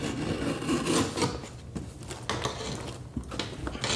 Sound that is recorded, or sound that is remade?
recorded